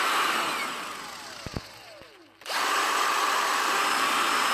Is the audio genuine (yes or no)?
yes